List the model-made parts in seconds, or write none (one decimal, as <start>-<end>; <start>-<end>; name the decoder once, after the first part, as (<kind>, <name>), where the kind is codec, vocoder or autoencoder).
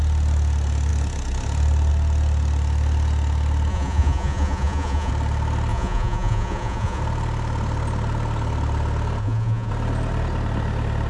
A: 3.7-5.1 (vocoder, Vocos); 5.7-7.0; 9.2-9.7